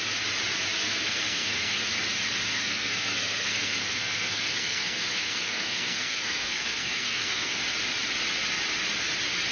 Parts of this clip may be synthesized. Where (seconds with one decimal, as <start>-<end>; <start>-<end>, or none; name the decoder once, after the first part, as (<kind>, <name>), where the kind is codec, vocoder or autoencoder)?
0.8-1.8 (codec, SNAC); 2.5-7.6